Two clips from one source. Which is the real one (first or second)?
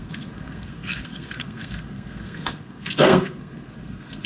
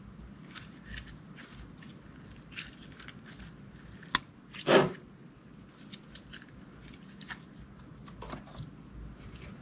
second